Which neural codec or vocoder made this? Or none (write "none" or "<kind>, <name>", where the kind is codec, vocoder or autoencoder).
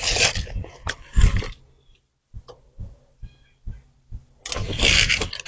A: none